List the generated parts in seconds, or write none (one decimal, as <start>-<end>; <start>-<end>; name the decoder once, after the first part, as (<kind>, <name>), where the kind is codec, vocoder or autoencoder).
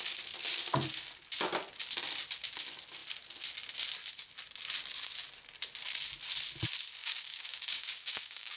7.0-8.6 (codec, DAC)